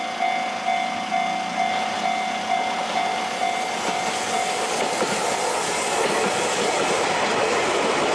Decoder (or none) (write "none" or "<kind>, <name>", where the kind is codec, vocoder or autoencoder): none